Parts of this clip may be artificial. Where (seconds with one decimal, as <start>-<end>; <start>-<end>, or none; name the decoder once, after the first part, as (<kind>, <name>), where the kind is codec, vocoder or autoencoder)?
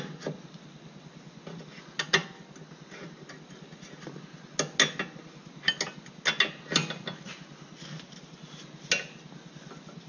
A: none